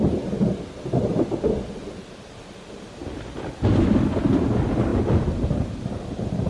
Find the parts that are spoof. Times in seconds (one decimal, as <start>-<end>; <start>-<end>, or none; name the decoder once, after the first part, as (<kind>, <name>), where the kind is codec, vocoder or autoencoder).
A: none